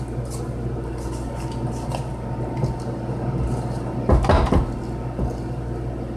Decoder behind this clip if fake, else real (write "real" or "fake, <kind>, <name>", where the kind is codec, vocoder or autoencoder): real